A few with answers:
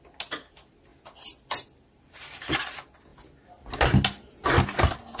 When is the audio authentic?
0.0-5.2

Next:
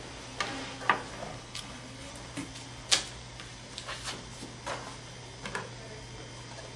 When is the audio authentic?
0.0-1.3; 2.1-6.8

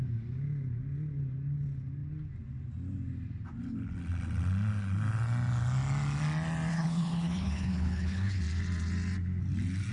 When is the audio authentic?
0.0-6.7; 8.4-9.9